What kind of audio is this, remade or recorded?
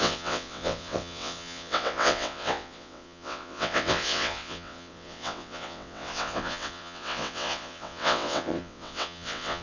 remade